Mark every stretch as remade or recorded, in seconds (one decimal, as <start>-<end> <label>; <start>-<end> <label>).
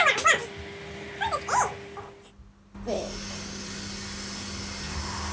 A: 0.0-5.3 recorded